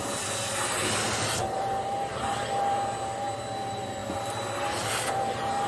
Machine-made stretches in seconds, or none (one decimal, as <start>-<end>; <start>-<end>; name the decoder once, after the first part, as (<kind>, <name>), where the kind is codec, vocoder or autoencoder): none